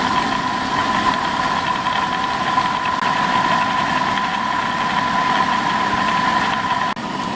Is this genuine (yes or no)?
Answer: yes